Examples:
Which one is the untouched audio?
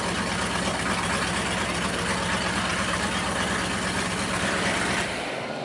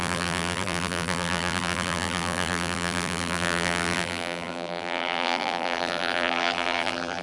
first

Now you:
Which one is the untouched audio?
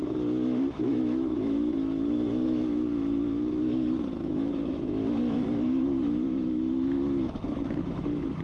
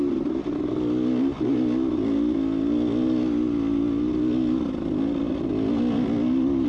second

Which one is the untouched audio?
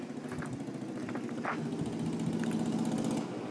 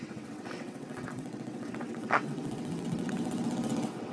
first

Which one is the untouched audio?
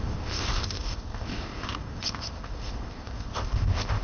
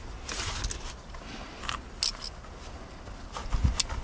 second